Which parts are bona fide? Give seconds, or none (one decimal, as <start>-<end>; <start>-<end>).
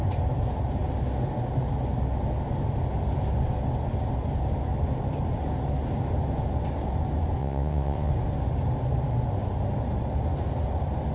0.0-7.4; 8.1-11.1